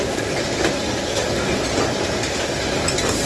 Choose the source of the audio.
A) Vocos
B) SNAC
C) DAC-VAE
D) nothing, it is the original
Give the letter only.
D